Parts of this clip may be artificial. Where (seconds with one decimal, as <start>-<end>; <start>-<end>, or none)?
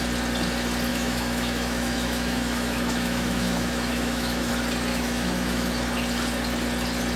0.9-4.5; 4.9-5.7